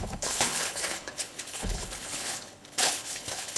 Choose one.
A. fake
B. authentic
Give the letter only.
A